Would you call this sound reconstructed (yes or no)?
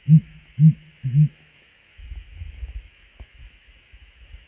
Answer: yes